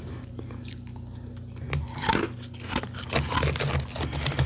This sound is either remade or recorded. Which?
recorded